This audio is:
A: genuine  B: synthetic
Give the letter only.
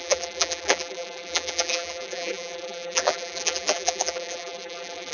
B